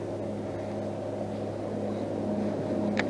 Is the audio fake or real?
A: real